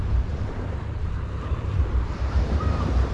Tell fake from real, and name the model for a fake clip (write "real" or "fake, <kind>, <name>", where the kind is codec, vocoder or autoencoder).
fake, vocoder, BigVGAN v2